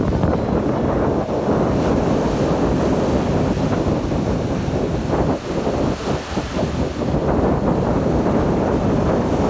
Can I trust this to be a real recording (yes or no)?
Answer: yes